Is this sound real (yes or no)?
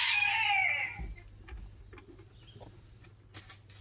yes